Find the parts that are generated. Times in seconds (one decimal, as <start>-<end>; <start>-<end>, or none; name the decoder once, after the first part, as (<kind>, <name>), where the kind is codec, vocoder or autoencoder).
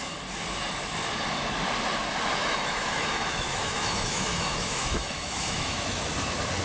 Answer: 2.4-6.0 (autoencoder, DAC-VAE)